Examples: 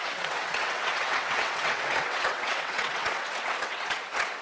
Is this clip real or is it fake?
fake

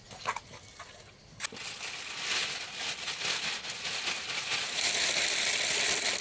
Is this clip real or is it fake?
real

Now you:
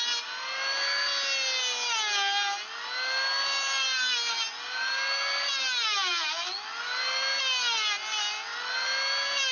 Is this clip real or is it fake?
real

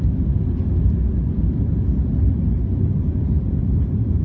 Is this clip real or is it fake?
real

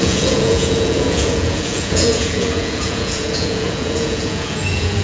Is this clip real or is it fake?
fake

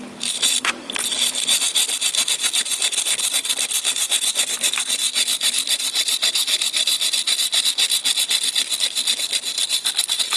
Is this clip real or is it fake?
fake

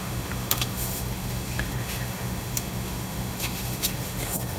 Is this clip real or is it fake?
fake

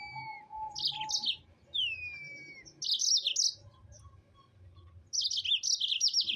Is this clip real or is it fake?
real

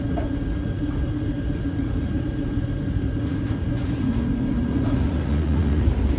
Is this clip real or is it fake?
fake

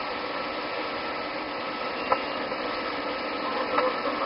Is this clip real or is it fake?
real